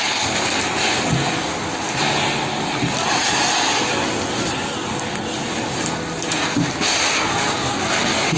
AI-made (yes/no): no